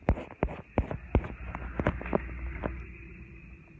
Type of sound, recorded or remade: remade